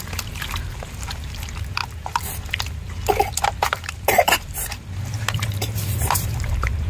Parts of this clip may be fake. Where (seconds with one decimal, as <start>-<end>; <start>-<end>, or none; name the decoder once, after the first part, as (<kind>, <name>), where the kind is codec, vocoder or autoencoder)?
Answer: 0.0-1.8 (vocoder, BigVGAN v2); 3.6-6.9